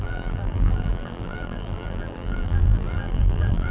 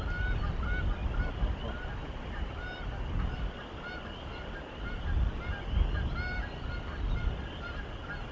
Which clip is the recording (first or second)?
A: second